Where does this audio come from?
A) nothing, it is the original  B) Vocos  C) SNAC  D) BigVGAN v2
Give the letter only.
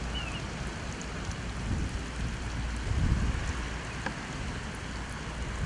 A